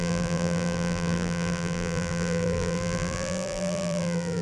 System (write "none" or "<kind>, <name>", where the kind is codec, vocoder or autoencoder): vocoder, BigVGAN v2